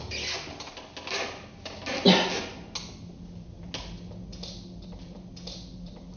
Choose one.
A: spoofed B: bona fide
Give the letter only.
B